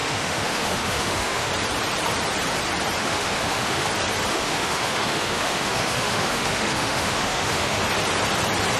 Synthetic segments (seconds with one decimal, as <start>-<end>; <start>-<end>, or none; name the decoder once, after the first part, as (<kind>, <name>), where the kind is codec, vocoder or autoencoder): 0.0-1.5 (autoencoder, DAC-VAE); 3.0-3.9; 4.3-7.8